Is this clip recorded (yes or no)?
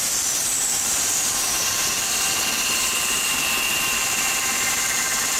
no